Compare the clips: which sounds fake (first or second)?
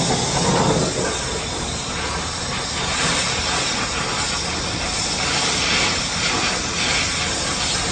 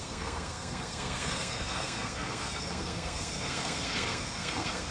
second